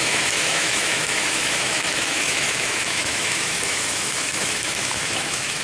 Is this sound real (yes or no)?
no